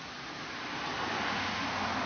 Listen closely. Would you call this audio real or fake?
real